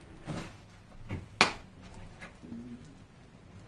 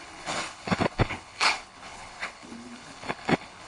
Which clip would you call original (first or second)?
first